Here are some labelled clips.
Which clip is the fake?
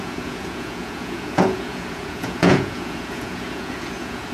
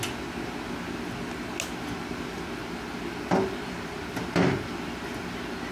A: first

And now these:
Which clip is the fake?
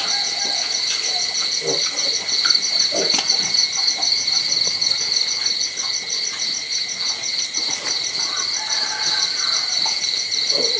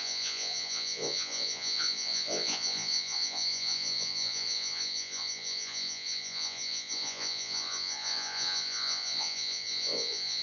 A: second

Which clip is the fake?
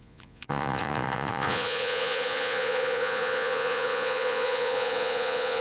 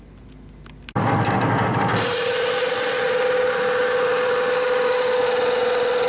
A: first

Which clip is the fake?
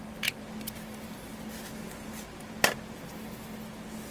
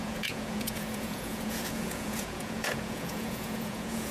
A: second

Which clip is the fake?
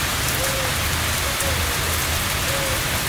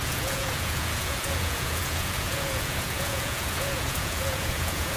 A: second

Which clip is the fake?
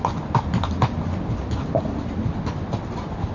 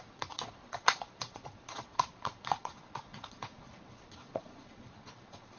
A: second